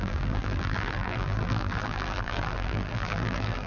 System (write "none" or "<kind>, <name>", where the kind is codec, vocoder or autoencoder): vocoder, BigVGAN v2